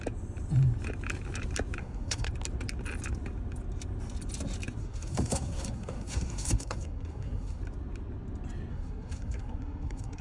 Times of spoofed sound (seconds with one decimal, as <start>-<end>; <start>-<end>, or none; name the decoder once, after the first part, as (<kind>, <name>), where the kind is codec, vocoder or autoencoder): 1.8-2.3 (codec, SNAC); 4.8-7.6; 8.7-10.2